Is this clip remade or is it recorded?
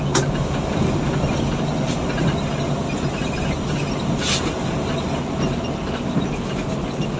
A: recorded